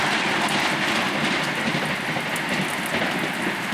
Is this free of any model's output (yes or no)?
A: yes